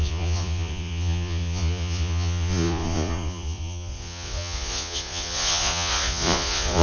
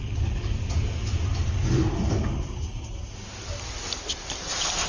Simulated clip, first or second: first